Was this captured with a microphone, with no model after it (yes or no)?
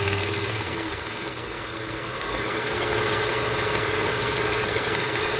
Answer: no